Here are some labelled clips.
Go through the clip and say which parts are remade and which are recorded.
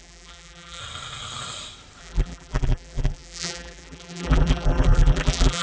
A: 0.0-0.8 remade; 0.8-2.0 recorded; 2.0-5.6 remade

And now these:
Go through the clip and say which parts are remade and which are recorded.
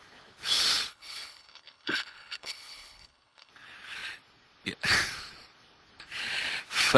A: 0.0-0.9 recorded; 0.9-3.5 remade; 3.5-7.0 recorded